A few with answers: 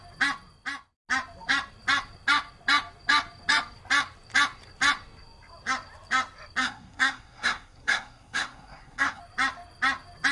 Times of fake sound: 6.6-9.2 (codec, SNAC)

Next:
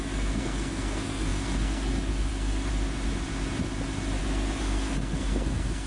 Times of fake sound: 0.0-2.7 (codec, SNAC); 4.2-5.9

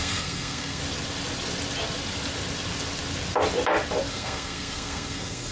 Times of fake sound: 0.0-0.8 (codec, SNAC); 4.1-5.5

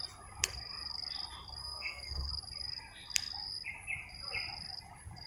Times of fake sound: 1.6-2.3 (codec, SNAC)

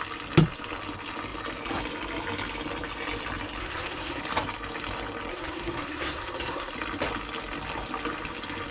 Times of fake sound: 3.6-4.2 (codec, SNAC); 5.3-6.7

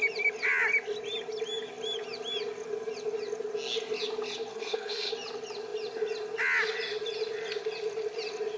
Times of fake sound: 4.5-5.1 (codec, SNAC)